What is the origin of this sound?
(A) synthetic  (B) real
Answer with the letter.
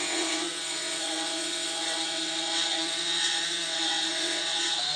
A